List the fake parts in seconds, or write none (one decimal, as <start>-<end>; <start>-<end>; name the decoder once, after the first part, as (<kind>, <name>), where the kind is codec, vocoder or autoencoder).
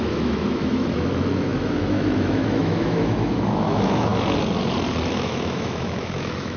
0.0-4.1 (autoencoder, DAC-VAE); 5.1-6.6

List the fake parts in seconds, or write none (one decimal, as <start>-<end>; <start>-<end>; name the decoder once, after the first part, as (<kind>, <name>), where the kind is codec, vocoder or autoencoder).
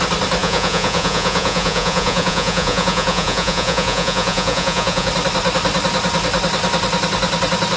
0.4-5.1 (vocoder, Vocos)